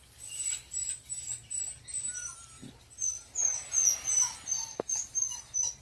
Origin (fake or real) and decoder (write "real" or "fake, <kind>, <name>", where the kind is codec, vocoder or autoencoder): real